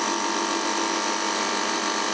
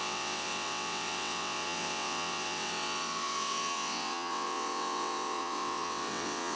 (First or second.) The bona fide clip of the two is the first